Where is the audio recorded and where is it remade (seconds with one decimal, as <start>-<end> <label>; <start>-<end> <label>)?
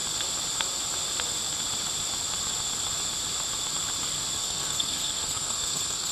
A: 0.0-4.4 recorded; 4.4-6.1 remade